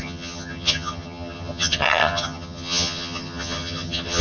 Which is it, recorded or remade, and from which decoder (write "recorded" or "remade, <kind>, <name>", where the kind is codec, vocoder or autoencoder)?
remade, vocoder, HiFi-GAN